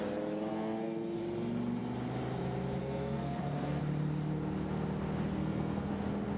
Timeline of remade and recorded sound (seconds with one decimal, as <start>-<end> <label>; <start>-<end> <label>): 0.0-0.5 recorded; 0.5-1.2 remade; 1.2-2.8 recorded; 2.8-3.8 remade; 3.8-5.4 recorded; 5.4-5.9 remade; 5.9-6.4 recorded